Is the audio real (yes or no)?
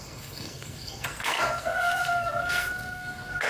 no